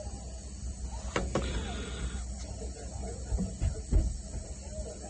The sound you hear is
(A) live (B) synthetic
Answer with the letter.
A